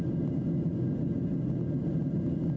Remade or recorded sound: recorded